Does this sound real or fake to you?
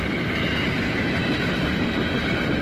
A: fake